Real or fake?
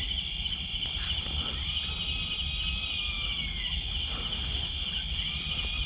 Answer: real